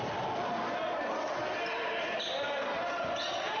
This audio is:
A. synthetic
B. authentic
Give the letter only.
B